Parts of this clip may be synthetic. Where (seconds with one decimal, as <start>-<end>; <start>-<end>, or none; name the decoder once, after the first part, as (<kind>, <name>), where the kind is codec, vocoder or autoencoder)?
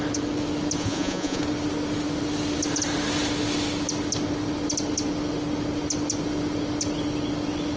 0.8-1.4 (vocoder, Vocos)